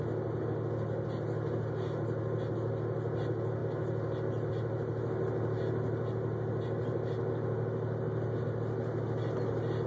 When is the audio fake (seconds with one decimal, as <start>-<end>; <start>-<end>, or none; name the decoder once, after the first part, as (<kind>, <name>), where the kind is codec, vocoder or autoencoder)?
none